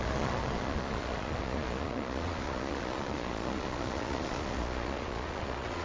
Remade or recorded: remade